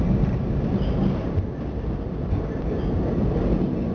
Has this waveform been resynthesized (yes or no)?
no